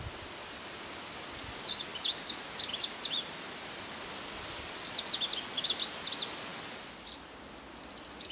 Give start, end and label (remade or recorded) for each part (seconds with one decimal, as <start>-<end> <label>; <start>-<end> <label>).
0.0-8.3 recorded